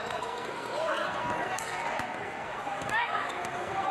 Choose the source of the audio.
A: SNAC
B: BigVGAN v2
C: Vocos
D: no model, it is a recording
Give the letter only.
A